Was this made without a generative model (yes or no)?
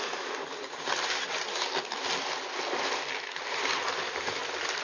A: yes